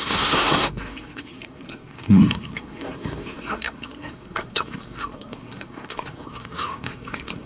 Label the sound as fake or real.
fake